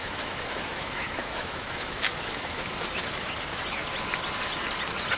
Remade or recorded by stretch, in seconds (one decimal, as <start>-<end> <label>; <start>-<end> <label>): 0.0-3.1 remade; 3.1-5.2 recorded